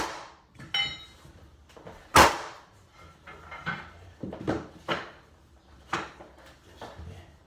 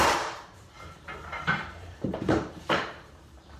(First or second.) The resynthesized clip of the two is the second